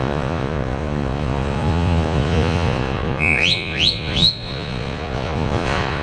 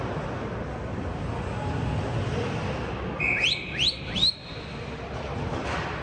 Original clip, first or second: second